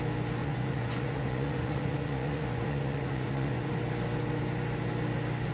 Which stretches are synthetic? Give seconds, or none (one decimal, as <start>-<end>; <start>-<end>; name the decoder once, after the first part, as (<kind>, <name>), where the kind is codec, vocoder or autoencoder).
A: 0.4-3.7 (vocoder, Vocos)